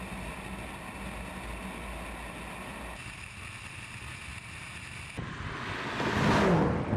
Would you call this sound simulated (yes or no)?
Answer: no